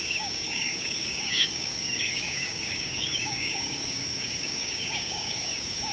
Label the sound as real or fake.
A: fake